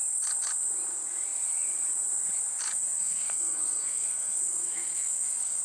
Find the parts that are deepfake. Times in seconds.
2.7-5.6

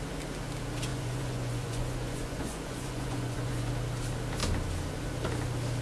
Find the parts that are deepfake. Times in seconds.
0.9-3.7

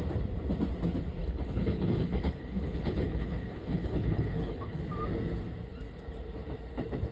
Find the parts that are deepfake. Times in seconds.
1.2-4.8

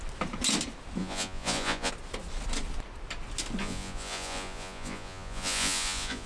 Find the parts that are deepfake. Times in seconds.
1.0-1.9; 3.6-6.3